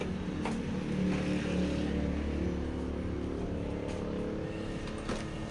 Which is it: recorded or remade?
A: recorded